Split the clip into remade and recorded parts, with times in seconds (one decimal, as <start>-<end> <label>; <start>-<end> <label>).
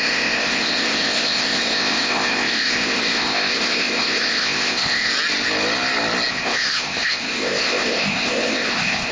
0.0-5.1 remade; 5.1-6.3 recorded; 6.3-9.1 remade